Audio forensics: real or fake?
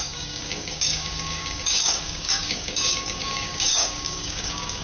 fake